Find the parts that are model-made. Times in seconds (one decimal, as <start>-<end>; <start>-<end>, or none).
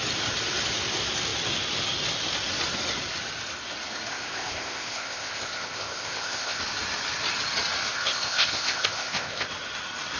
4.1-6.6; 7.9-9.5